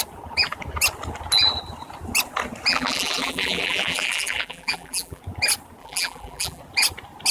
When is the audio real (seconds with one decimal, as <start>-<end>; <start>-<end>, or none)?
0.0-2.7; 5.2-5.8; 6.6-7.3